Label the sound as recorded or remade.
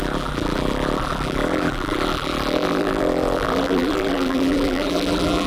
remade